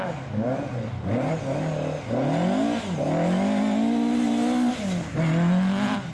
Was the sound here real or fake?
real